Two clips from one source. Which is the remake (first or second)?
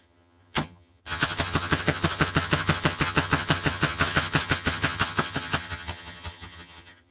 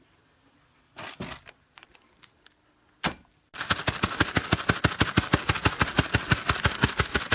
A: first